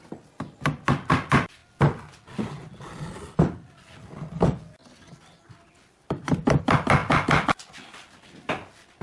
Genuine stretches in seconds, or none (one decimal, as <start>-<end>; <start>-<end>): 0.0-9.0